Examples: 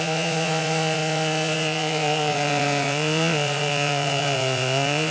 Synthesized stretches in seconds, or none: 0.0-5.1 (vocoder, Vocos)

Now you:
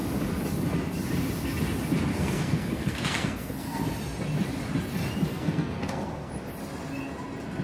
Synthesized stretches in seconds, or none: 2.1-3.8 (codec, SNAC); 5.3-6.3

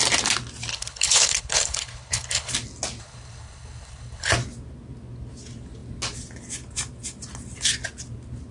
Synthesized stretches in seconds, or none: 0.7-2.5 (codec, HILCodec); 3.0-4.3